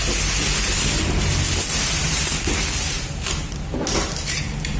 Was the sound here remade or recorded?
recorded